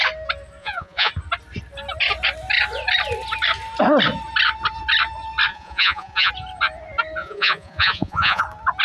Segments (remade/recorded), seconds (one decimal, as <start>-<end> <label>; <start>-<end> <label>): 0.0-0.6 recorded; 0.6-1.1 remade; 1.1-5.5 recorded; 5.5-6.3 remade; 6.3-7.2 recorded; 7.2-8.4 remade; 8.4-8.8 recorded